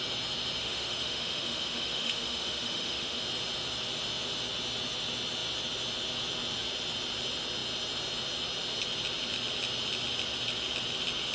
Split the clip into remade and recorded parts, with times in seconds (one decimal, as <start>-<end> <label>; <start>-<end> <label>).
0.0-0.6 recorded; 0.6-3.2 remade; 3.2-11.3 recorded